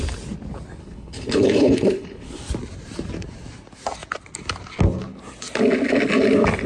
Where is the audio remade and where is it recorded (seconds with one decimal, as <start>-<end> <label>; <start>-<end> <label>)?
0.0-0.8 recorded; 0.8-2.4 remade; 2.4-6.7 recorded